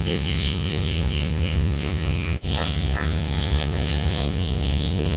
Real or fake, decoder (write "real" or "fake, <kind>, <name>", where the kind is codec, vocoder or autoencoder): fake, vocoder, Vocos